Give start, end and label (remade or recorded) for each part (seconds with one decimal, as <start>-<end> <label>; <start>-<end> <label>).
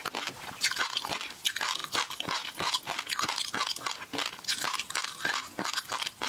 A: 0.0-6.3 recorded